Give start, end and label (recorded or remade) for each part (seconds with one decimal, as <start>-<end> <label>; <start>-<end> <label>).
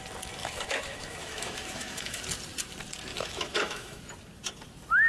0.0-0.4 recorded; 0.4-2.2 remade; 2.2-3.1 recorded; 3.1-4.0 remade; 4.0-5.1 recorded